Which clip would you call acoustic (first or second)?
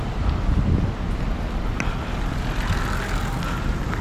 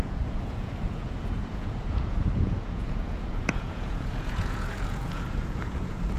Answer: first